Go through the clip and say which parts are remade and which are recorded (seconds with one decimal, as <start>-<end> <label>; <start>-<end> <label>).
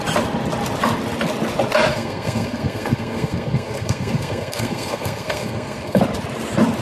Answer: 0.0-1.9 recorded; 1.9-6.0 remade; 6.0-6.8 recorded